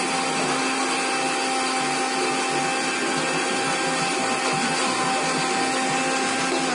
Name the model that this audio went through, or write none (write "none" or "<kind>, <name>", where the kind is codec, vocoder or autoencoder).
none